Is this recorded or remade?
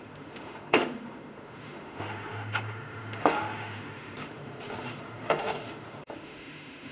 remade